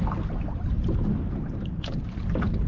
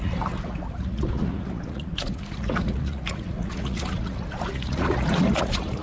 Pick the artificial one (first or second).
second